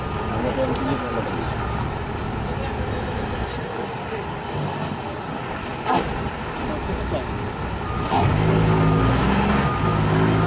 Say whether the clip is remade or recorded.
recorded